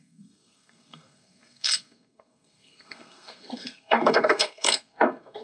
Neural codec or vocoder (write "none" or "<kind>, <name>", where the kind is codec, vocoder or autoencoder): codec, SNAC